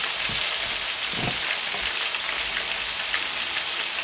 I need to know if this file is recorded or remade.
recorded